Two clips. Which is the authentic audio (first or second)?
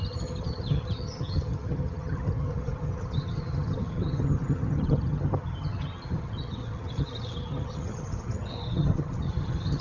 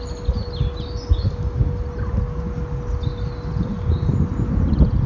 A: second